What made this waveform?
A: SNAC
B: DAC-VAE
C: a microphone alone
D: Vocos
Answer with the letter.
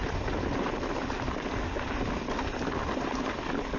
C